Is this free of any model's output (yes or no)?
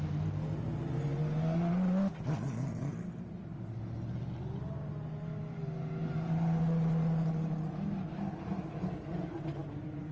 yes